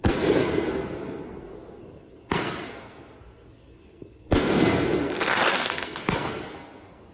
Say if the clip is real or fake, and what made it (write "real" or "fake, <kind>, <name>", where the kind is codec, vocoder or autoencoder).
fake, codec, SNAC